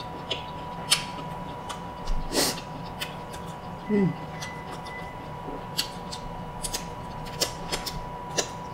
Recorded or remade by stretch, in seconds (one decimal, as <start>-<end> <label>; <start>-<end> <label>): 0.0-1.1 recorded; 1.1-1.7 remade; 1.7-8.7 recorded